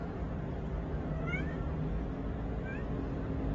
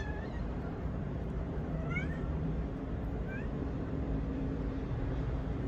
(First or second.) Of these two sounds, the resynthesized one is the second